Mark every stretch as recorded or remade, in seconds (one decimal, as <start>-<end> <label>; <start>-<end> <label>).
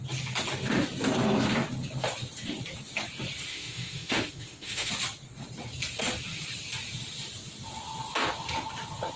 0.0-3.5 recorded; 3.5-4.9 remade; 4.9-9.2 recorded